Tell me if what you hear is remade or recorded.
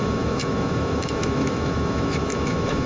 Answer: remade